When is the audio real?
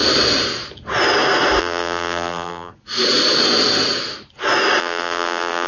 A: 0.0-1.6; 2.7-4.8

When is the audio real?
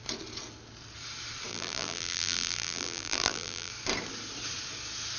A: 0.0-1.5; 3.7-5.2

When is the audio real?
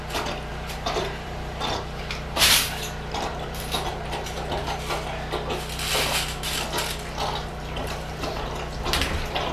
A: 0.0-0.5; 4.5-7.8; 8.6-9.5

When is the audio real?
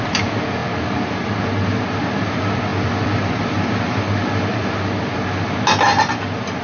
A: 0.0-2.7; 4.7-6.6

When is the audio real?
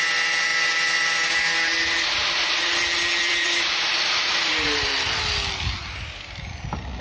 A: 0.0-3.2; 4.9-7.0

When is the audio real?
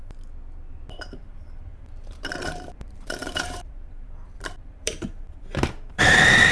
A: 0.0-0.7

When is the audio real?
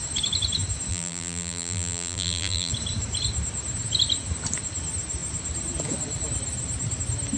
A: 0.0-0.9; 2.7-7.4